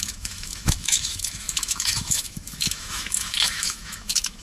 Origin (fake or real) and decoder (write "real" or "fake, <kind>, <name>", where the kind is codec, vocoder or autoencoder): fake, autoencoder, DAC-VAE